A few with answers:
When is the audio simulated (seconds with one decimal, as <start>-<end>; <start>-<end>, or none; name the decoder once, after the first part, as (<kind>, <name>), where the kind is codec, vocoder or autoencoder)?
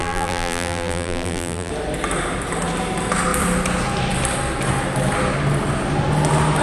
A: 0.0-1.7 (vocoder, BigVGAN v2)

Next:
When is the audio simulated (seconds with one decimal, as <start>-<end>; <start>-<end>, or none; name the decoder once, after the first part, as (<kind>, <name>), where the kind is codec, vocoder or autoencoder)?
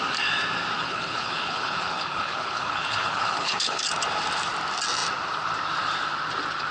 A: 0.8-3.8 (codec, HILCodec)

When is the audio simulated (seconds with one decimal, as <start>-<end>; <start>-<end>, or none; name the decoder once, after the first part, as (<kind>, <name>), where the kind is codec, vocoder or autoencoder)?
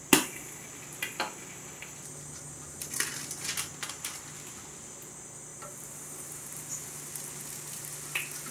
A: 5.5-6.8 (vocoder, BigVGAN v2)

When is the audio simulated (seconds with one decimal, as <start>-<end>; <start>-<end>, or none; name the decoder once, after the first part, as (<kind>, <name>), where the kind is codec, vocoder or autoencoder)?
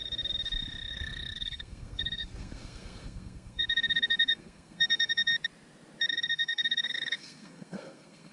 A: 0.9-5.3 (codec, SNAC); 6.1-8.3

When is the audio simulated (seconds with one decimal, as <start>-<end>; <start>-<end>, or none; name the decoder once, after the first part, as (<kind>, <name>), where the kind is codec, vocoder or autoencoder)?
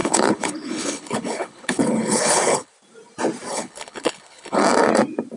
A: 0.0-2.7 (codec, HILCodec); 3.5-4.6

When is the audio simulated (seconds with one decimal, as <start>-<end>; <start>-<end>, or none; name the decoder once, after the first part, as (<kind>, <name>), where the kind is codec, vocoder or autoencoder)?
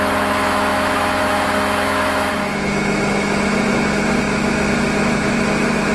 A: 0.0-5.9 (autoencoder, DAC-VAE)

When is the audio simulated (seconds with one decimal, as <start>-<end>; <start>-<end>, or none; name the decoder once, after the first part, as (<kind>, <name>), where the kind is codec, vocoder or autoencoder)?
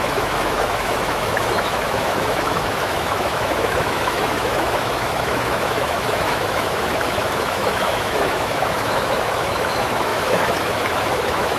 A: 0.0-11.6 (autoencoder, DAC-VAE)